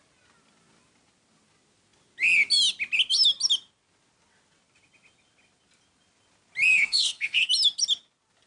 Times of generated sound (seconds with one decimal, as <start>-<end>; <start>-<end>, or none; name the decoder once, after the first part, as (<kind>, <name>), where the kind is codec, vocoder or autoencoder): 6.7-7.5 (codec, SNAC)